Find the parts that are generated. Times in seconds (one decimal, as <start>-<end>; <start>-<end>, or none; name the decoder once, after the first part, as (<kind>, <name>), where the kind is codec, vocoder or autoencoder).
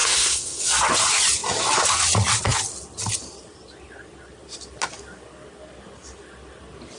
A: 0.0-0.6 (codec, SNAC)